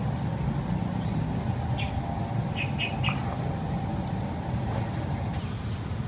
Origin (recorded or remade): recorded